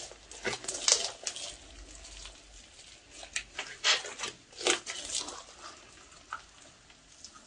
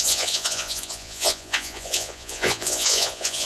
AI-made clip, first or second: second